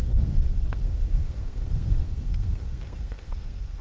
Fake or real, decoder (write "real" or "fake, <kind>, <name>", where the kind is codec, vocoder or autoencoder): fake, codec, SNAC